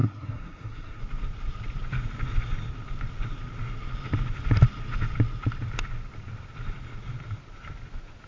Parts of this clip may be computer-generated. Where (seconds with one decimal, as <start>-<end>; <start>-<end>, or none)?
0.0-1.0

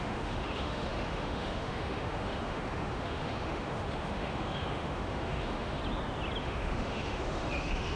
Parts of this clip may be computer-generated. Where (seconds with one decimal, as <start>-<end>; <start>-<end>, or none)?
0.0-5.8; 6.4-8.0

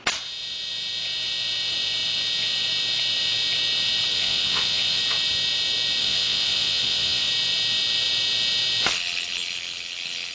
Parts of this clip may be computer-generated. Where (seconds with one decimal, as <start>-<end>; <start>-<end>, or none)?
4.1-5.0; 6.0-7.3

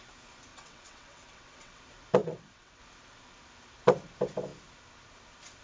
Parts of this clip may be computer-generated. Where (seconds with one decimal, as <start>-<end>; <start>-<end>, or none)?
0.5-1.8; 2.2-2.8

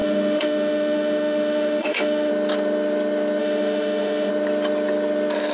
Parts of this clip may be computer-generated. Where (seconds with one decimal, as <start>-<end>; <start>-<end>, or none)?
0.0-2.3; 3.4-4.3

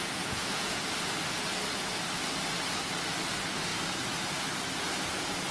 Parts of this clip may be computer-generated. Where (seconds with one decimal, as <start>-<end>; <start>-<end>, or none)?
0.0-0.8

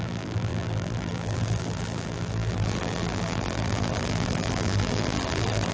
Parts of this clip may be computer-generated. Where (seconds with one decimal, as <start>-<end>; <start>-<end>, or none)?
0.0-5.7